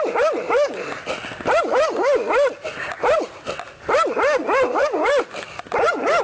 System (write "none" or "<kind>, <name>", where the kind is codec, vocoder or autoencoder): none